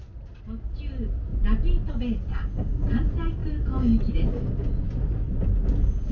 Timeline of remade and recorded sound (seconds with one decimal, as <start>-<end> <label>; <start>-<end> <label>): 0.0-6.1 recorded